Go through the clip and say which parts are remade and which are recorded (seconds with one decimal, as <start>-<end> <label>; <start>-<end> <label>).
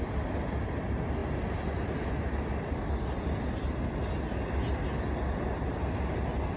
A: 0.0-6.6 recorded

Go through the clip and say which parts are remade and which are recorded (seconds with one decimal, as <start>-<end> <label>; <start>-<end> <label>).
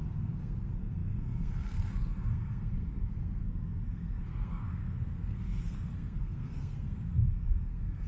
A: 0.0-8.1 remade